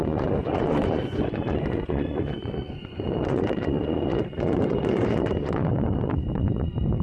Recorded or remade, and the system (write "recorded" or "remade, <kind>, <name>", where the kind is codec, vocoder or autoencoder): remade, vocoder, Vocos